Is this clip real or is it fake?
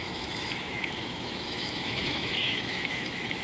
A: fake